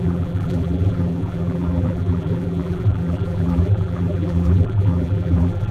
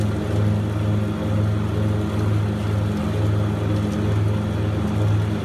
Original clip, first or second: second